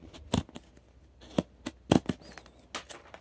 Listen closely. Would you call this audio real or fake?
real